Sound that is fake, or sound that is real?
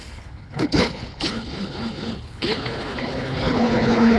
fake